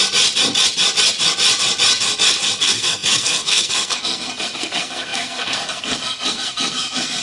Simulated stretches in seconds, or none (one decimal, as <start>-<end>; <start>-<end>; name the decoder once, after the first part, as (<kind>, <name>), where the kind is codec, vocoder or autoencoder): 2.6-7.2 (codec, SNAC)